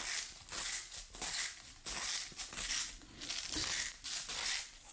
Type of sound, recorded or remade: recorded